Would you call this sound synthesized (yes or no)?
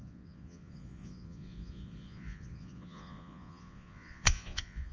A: yes